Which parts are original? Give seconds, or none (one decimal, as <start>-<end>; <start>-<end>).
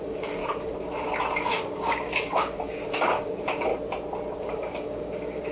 0.4-1.4; 3.7-4.4